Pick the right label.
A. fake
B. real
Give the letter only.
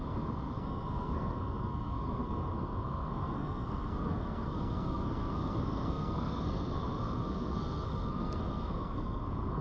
A